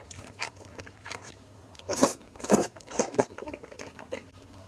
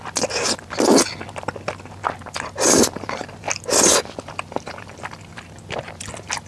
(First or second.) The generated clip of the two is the first